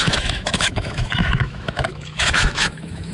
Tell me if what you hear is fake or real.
fake